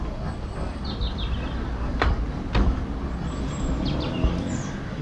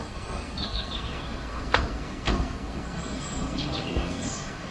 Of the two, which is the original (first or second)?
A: first